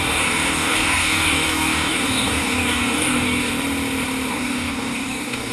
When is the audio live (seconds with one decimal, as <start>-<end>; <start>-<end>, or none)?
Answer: 3.5-4.3